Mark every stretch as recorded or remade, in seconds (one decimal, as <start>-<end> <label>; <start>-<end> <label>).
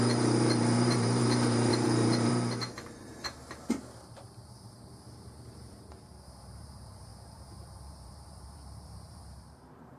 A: 0.0-10.0 remade